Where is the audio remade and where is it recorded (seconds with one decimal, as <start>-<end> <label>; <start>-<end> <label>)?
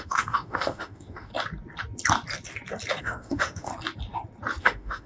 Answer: 0.0-1.3 remade; 1.3-3.0 recorded; 3.0-3.7 remade; 3.7-4.6 recorded; 4.6-5.1 remade